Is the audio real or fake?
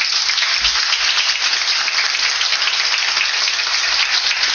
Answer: real